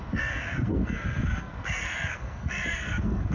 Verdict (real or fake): fake